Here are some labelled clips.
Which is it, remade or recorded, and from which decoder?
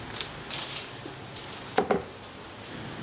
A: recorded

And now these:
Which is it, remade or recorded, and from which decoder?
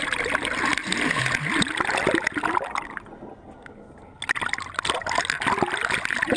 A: recorded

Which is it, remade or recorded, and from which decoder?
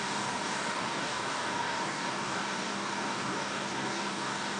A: remade, codec, DAC